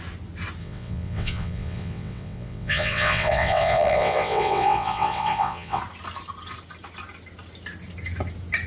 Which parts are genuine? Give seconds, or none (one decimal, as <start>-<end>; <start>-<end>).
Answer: 0.0-0.6; 5.8-8.7